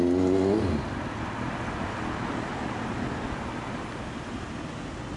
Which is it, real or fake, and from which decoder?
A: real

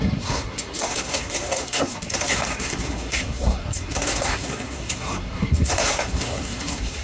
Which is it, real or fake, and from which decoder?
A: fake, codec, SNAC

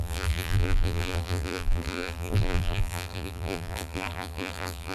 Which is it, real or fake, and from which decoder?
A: fake, vocoder, BigVGAN v2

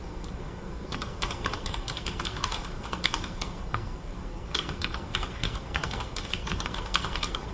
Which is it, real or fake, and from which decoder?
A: fake, codec, SNAC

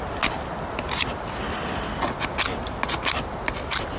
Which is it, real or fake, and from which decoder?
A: real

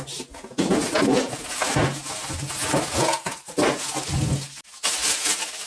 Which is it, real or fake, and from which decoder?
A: real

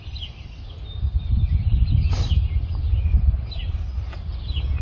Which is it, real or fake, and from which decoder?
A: real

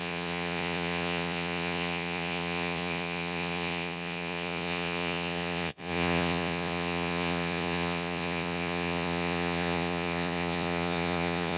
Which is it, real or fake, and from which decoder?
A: fake, vocoder, Vocos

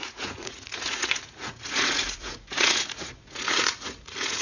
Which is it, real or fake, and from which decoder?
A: fake, vocoder, Vocos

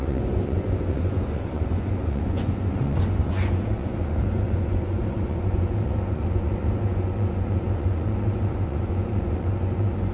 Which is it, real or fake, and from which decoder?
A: fake, vocoder, Vocos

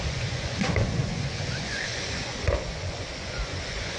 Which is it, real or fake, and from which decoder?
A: fake, vocoder, Vocos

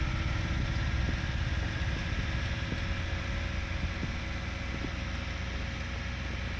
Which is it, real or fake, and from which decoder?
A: real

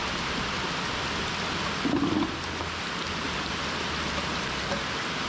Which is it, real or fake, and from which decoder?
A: real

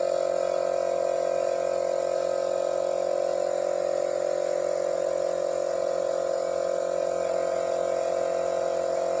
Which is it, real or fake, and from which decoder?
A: real